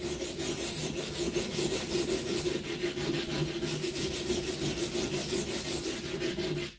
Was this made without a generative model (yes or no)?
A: yes